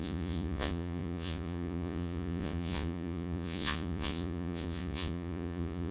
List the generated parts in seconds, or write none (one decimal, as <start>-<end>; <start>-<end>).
0.0-5.9